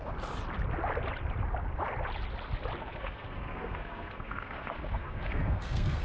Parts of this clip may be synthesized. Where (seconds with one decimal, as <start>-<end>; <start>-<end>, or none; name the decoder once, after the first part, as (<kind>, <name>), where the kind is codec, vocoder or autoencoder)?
2.8-6.0 (codec, SNAC)